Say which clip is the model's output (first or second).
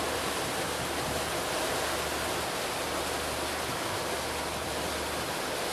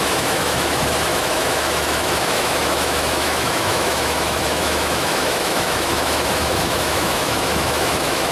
second